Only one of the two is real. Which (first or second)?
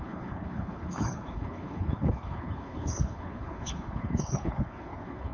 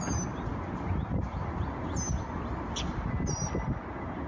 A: second